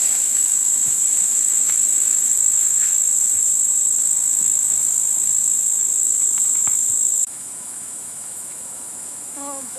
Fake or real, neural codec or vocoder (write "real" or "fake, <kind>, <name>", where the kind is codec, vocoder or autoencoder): fake, autoencoder, DAC-VAE